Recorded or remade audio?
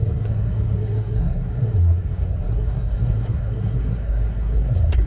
remade